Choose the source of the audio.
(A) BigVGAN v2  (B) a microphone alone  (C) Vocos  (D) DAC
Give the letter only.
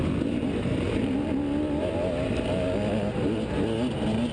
B